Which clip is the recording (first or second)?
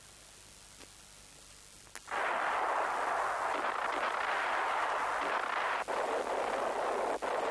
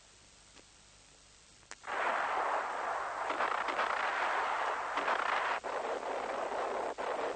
first